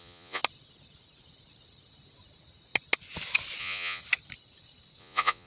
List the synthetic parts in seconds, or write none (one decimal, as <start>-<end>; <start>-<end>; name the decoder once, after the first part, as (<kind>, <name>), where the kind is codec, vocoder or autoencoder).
0.0-0.4 (vocoder, Vocos); 3.6-4.0; 5.0-5.5